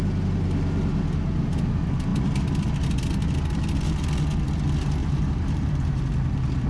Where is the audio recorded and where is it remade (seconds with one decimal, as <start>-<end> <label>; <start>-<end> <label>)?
0.0-5.0 recorded; 5.0-6.0 remade; 6.0-6.7 recorded